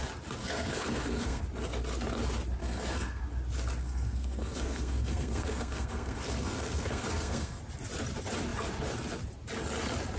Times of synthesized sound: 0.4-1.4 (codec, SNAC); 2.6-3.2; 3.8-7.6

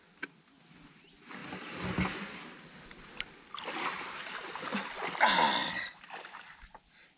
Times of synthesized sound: none